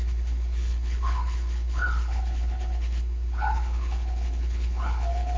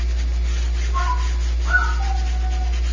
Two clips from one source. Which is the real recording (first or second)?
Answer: second